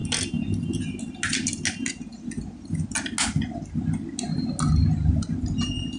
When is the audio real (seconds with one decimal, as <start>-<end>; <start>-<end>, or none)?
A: 0.0-6.0